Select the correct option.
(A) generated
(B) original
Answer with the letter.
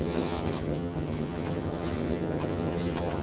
A